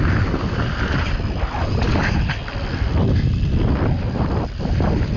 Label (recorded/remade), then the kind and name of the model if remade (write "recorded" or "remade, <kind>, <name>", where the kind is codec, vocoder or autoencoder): recorded